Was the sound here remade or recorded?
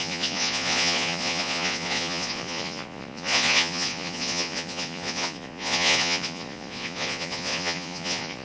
remade